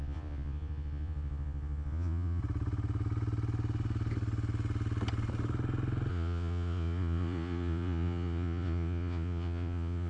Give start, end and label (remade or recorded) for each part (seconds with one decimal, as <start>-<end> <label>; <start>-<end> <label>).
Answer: 0.0-2.4 remade; 2.4-6.1 recorded; 6.1-10.1 remade